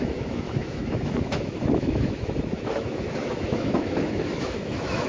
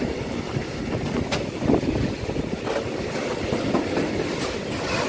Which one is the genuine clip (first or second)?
second